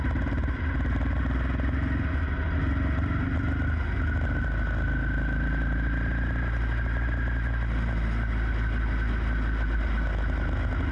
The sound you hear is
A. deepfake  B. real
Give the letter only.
B